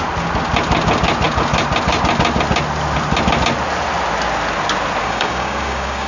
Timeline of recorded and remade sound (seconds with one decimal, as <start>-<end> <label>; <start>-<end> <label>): 0.0-5.0 recorded; 5.0-6.1 remade